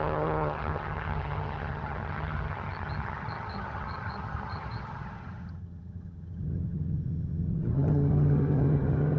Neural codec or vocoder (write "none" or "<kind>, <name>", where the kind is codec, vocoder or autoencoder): vocoder, HiFi-GAN